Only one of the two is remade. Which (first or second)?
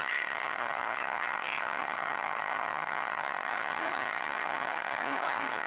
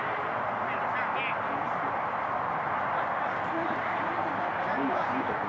first